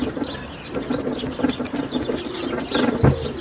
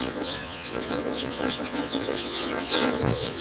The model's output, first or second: second